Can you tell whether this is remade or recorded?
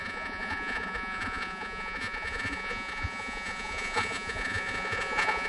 remade